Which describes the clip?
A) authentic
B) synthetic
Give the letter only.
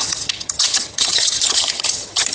B